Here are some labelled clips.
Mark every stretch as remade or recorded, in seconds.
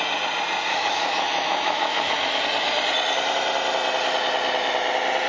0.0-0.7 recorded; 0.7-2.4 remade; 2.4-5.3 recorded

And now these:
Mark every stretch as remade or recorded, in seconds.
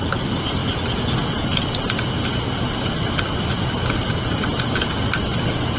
0.0-5.8 recorded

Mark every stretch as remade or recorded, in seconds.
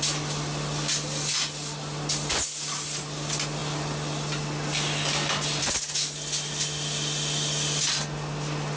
0.0-8.8 recorded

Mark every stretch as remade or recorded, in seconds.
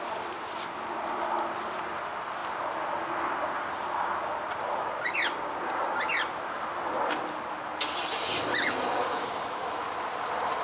0.0-9.0 recorded; 9.0-9.8 remade; 9.8-10.6 recorded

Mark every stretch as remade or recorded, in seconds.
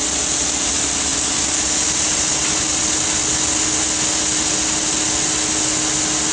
0.0-6.3 recorded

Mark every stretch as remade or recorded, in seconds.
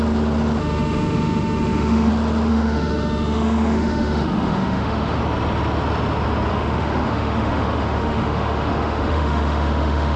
0.0-0.6 recorded; 0.6-2.1 remade; 2.1-2.5 recorded; 2.5-5.2 remade; 5.2-6.5 recorded; 6.5-10.2 remade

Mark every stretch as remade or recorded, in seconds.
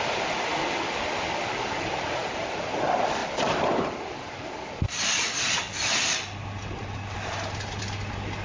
0.0-8.4 recorded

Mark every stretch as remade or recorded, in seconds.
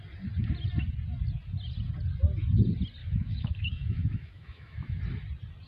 0.0-3.0 recorded; 3.0-5.0 remade; 5.0-5.7 recorded